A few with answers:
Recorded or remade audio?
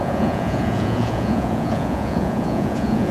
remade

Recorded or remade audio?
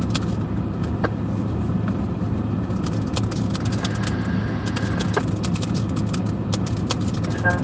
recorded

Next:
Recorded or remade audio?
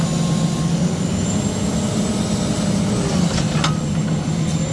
recorded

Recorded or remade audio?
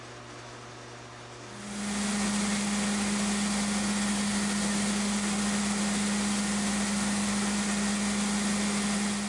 recorded